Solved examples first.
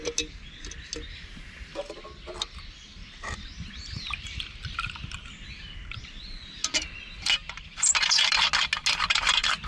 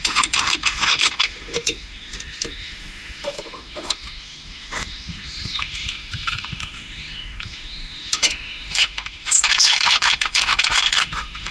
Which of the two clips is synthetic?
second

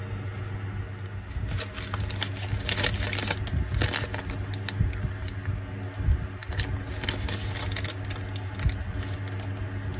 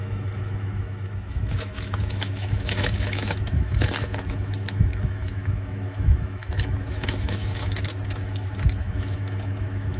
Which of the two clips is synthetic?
second